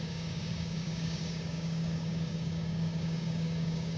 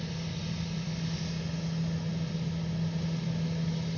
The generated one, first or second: first